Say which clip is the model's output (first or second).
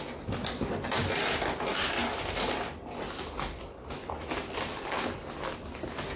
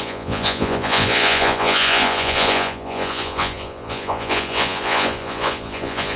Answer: second